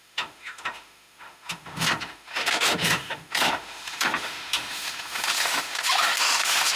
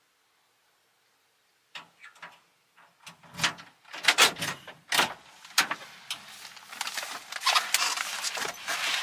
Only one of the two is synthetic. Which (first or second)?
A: first